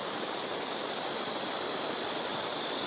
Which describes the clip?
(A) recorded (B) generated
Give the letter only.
A